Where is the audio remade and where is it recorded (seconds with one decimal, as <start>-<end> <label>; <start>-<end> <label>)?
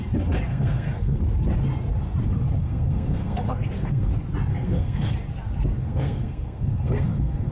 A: 0.0-0.5 recorded; 0.5-1.2 remade; 1.2-2.6 recorded; 2.6-4.1 remade; 4.1-4.5 recorded; 4.5-5.1 remade; 5.1-5.8 recorded; 5.8-7.5 remade